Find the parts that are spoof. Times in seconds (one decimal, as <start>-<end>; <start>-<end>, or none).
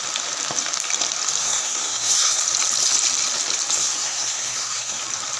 1.4-2.4; 3.8-5.0